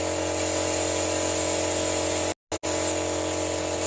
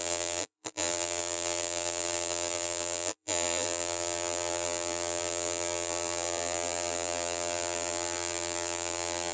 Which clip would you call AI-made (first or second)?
second